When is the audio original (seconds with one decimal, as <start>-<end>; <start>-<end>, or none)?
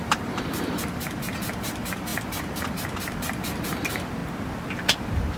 4.2-5.4